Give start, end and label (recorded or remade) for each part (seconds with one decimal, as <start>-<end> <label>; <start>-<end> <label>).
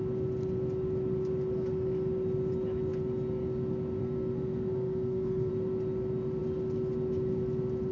0.0-4.0 recorded; 4.0-5.5 remade; 5.5-7.9 recorded